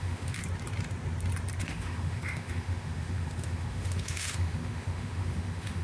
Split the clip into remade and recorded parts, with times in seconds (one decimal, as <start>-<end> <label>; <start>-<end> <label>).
0.0-0.4 remade; 0.4-1.6 recorded; 1.6-5.8 remade